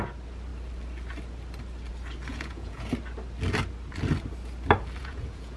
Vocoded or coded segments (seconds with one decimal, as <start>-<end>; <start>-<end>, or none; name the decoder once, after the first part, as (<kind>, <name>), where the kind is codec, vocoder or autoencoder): 2.3-2.9 (vocoder, Vocos); 5.0-5.6